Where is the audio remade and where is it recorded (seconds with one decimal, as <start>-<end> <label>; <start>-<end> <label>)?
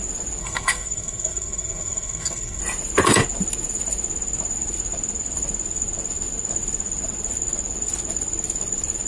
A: 0.0-0.4 recorded; 0.4-2.6 remade; 2.6-9.1 recorded